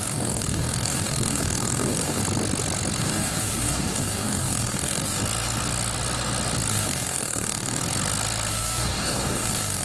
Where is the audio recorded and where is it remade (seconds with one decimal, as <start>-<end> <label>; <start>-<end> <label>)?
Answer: 0.0-2.2 remade; 2.2-3.0 recorded; 3.0-5.2 remade; 5.2-6.7 recorded; 6.7-7.8 remade; 7.8-8.5 recorded; 8.5-9.8 remade